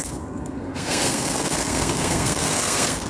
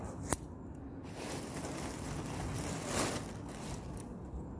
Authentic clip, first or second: second